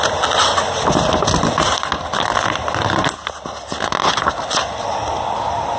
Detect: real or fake real